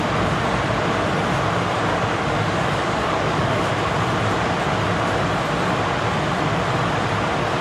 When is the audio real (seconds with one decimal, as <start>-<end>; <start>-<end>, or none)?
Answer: 0.0-1.9; 3.7-7.6